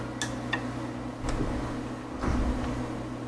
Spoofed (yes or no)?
no